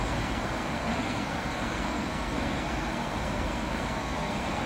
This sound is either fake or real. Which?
fake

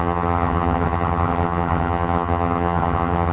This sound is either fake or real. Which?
fake